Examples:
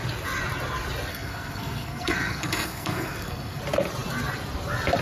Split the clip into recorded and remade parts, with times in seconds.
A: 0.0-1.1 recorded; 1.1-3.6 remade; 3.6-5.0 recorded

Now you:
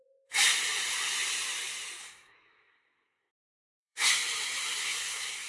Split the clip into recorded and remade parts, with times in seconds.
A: 0.0-2.0 recorded; 2.0-4.1 remade; 4.1-4.8 recorded; 4.8-5.5 remade

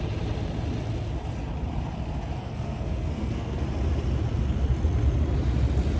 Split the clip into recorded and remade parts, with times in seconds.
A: 0.0-2.4 recorded; 2.4-3.6 remade; 3.6-6.0 recorded

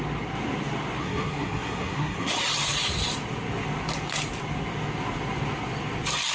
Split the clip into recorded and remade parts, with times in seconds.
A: 0.0-1.0 recorded; 1.0-2.3 remade; 2.3-6.3 recorded

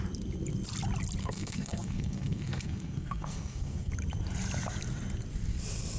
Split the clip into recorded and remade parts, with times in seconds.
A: 0.0-1.2 recorded; 1.2-3.9 remade; 3.9-6.0 recorded